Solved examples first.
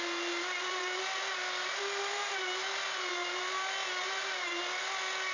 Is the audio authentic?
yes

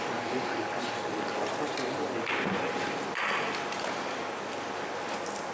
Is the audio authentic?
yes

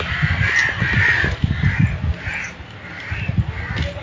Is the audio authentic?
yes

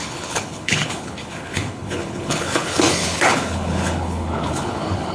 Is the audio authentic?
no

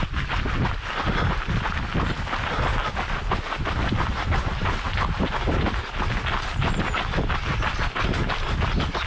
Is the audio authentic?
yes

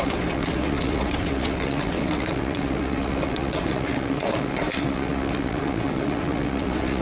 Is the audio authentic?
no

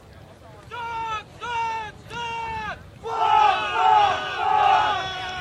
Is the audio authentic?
yes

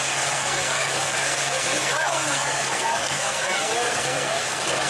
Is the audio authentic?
no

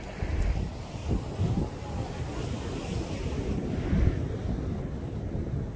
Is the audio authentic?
yes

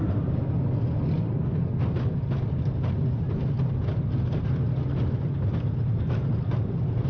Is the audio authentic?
yes